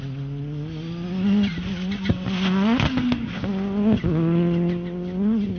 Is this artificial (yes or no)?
no